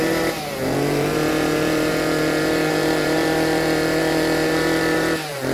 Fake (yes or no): yes